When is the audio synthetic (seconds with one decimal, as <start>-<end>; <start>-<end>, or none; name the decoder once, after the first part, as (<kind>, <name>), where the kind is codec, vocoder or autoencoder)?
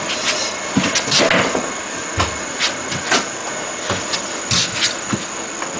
none